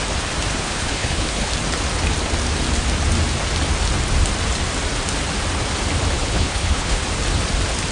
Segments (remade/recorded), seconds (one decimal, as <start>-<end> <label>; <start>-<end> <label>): 0.0-0.5 recorded; 0.5-1.5 remade; 1.5-6.2 recorded; 6.2-7.0 remade; 7.0-7.9 recorded